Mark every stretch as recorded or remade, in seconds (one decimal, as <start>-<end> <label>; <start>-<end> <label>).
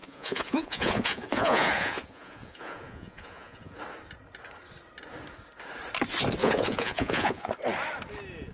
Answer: 0.0-3.8 remade; 3.8-6.4 recorded; 6.4-7.5 remade; 7.5-8.5 recorded